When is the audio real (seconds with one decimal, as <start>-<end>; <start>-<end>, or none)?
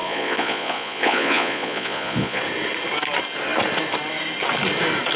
2.4-5.2